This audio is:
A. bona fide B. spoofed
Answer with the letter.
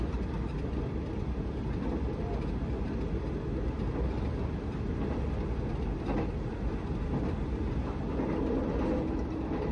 A